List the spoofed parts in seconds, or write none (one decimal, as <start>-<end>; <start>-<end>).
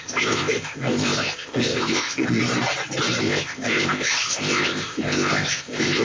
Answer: 0.0-2.4; 3.2-6.0